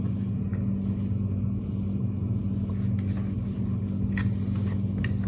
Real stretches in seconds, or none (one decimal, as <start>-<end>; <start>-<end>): 0.0-5.3

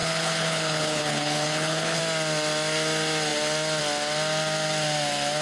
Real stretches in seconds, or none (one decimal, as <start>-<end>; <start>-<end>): 2.0-5.4

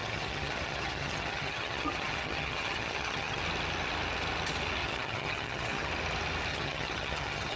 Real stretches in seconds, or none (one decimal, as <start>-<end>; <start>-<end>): 3.4-4.8; 5.9-6.5

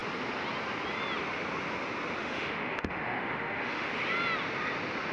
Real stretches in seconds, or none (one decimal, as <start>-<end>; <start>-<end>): 0.0-2.2; 3.9-5.1

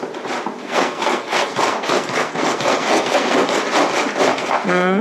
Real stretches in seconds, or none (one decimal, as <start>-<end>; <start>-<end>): 0.0-0.6; 3.6-4.3

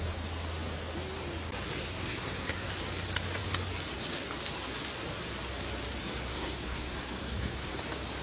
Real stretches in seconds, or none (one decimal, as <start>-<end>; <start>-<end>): 0.0-1.8; 2.7-6.0; 7.7-8.2

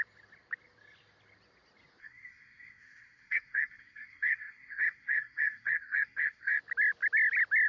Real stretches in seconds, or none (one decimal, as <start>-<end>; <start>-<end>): 0.0-2.0; 6.6-7.7